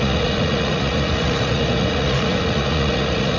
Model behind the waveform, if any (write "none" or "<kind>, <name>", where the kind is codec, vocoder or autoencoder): vocoder, Vocos